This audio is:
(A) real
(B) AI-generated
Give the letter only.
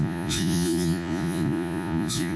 B